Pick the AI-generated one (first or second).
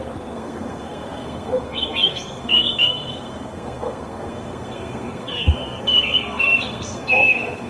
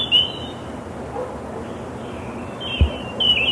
first